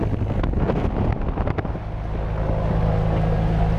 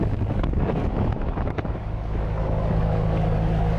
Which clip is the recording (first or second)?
first